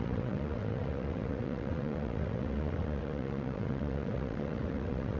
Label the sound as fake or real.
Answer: fake